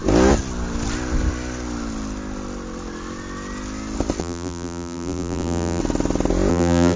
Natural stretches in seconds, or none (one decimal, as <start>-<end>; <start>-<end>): 0.0-4.2; 5.8-6.5